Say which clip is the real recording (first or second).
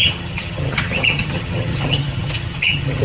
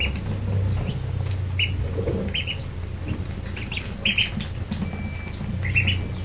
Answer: second